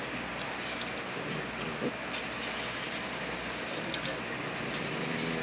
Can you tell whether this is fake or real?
real